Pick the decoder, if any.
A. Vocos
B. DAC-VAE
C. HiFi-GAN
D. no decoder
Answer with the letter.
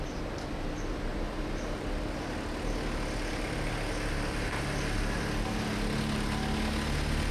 D